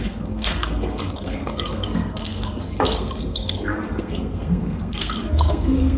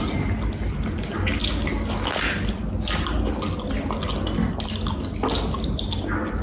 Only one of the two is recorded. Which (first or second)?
second